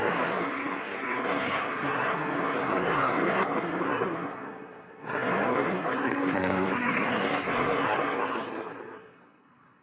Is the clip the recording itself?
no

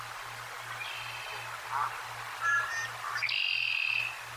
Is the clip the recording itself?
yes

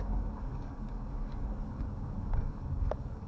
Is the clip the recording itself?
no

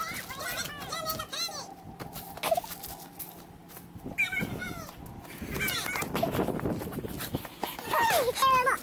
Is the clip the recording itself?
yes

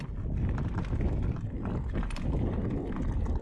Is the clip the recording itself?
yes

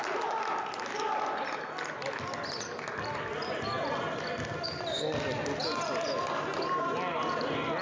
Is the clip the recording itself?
yes